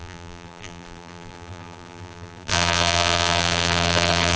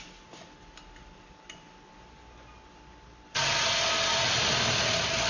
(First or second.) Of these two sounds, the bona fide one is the second